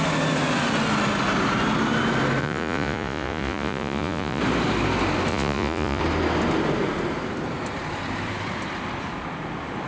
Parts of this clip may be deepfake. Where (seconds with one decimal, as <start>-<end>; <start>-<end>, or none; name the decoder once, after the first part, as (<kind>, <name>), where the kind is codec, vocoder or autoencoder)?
2.4-4.4 (vocoder, Vocos); 5.3-6.0